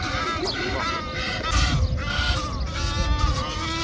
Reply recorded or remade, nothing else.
recorded